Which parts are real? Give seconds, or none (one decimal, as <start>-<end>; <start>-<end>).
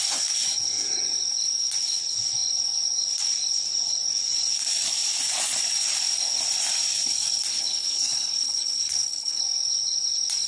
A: 0.0-7.5; 9.4-10.5